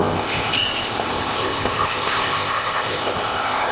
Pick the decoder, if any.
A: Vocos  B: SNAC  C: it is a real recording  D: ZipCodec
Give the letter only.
D